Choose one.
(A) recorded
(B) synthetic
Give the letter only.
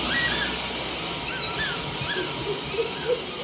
A